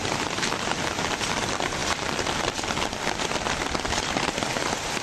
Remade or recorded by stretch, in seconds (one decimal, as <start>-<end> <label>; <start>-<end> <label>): 0.0-5.0 recorded